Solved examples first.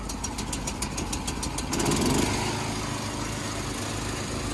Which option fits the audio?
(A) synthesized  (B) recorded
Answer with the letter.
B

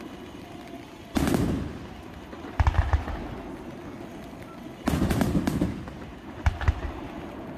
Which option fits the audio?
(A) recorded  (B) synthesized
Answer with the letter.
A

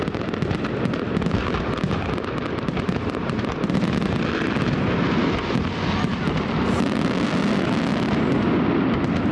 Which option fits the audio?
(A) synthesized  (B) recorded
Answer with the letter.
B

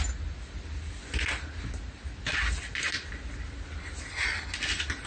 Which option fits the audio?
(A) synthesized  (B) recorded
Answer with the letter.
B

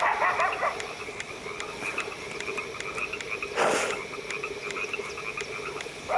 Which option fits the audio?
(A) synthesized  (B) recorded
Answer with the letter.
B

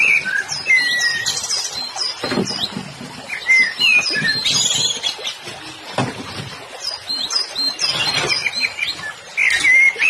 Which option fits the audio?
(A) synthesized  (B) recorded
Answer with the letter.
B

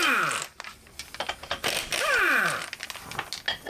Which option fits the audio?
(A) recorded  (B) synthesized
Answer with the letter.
A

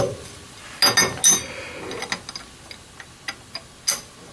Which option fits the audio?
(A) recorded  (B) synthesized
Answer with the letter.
A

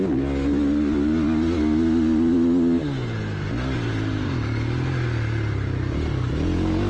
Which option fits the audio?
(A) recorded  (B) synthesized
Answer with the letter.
A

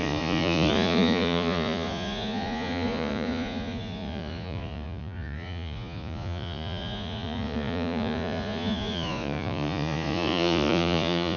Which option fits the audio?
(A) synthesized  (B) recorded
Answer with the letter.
A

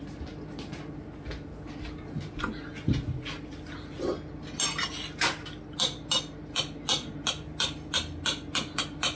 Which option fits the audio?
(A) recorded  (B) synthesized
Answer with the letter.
A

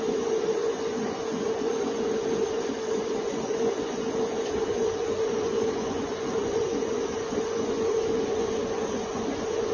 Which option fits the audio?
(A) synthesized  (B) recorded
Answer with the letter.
A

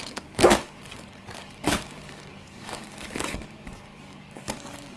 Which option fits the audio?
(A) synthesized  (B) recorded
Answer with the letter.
A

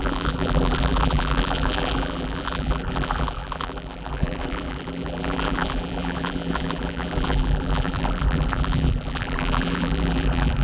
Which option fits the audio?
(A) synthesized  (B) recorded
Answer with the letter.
A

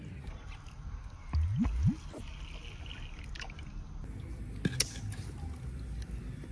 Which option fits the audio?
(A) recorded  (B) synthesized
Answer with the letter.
A